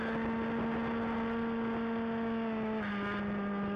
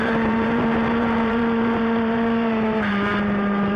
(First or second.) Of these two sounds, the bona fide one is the first